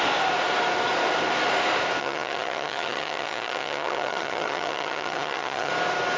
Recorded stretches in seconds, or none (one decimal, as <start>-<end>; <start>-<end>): 0.0-2.0; 5.7-6.2